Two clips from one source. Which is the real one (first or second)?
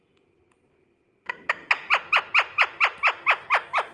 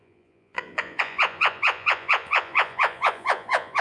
first